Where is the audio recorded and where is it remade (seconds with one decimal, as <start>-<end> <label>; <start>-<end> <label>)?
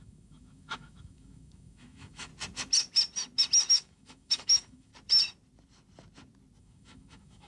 0.0-2.3 remade; 2.3-3.7 recorded; 3.7-4.9 remade; 4.9-6.6 recorded; 6.6-7.5 remade